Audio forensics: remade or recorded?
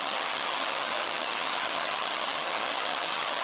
remade